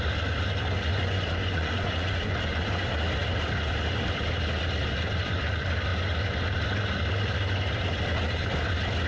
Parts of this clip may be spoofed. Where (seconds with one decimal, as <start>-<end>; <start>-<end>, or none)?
0.9-2.8